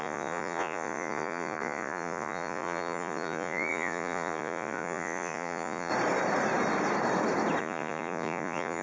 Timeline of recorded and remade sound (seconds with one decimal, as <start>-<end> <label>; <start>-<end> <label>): 0.0-5.9 remade; 5.9-7.6 recorded; 7.6-8.8 remade

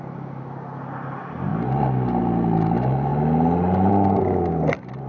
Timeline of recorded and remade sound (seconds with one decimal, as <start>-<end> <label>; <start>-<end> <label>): 0.0-5.1 recorded

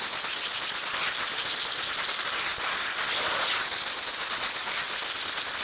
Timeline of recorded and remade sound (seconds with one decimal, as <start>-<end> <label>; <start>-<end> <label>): 0.0-5.6 recorded

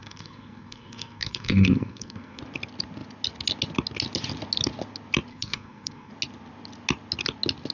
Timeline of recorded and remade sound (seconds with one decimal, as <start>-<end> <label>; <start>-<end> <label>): 0.0-2.4 remade; 2.4-5.3 recorded; 5.3-6.1 remade; 6.1-7.7 recorded

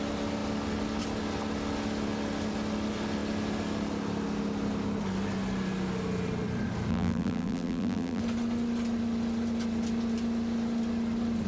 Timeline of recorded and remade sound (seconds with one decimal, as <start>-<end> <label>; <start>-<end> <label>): 0.0-6.9 recorded; 6.9-8.2 remade; 8.2-11.5 recorded

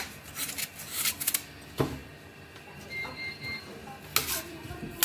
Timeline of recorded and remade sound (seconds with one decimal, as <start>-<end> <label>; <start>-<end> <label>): 0.0-4.2 recorded; 4.2-5.0 remade

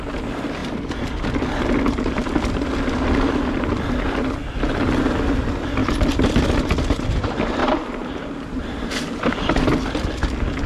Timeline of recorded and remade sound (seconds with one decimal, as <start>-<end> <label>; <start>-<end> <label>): 0.0-0.6 recorded; 0.6-1.1 remade; 1.1-7.6 recorded; 7.6-8.9 remade; 8.9-10.7 recorded

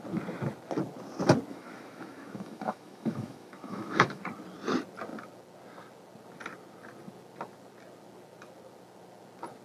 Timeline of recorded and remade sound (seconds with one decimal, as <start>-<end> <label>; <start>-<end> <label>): 0.0-1.5 recorded; 1.5-4.2 remade; 4.2-9.6 recorded